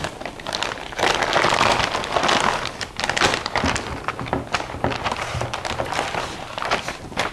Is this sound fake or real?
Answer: real